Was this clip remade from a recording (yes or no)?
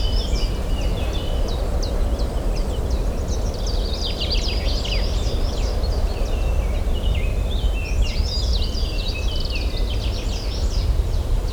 no